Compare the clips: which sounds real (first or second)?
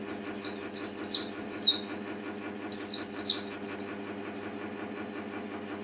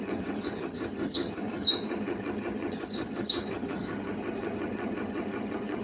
first